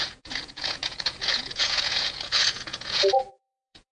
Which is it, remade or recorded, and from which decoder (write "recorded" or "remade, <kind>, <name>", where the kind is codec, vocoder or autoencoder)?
remade, vocoder, Vocos